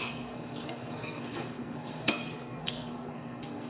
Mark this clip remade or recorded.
remade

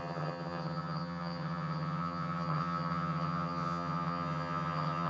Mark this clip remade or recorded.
remade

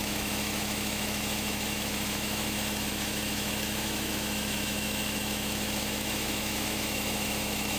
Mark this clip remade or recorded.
remade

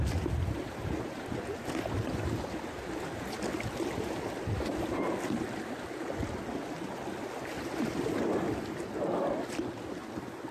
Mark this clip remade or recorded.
recorded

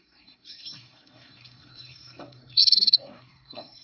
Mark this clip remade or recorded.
remade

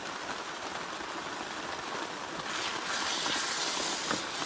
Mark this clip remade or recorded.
recorded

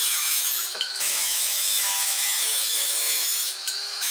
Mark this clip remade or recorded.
remade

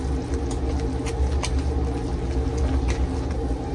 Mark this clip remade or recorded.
recorded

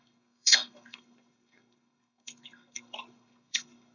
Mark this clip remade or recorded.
remade